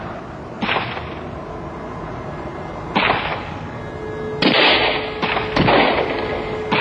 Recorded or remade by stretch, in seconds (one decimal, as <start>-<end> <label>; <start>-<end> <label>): 0.0-3.3 recorded; 3.3-3.8 remade; 3.8-6.8 recorded

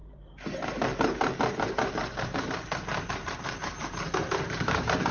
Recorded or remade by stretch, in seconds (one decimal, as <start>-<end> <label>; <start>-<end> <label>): 0.0-2.4 remade; 2.4-2.9 recorded; 2.9-5.1 remade